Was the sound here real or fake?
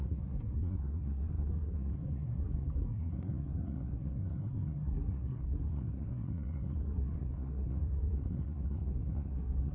fake